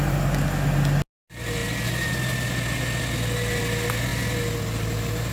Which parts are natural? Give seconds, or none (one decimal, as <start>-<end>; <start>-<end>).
0.0-5.3